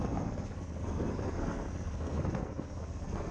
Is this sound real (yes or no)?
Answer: no